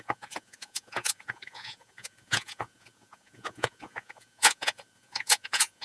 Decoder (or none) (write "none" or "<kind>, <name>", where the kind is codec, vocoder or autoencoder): vocoder, Vocos